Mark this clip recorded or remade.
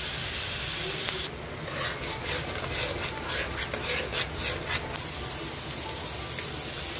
recorded